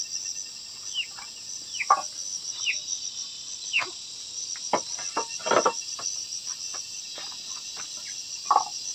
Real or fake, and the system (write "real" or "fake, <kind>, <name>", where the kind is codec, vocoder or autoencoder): real